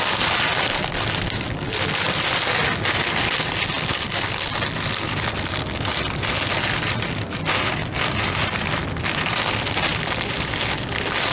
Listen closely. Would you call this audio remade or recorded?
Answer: recorded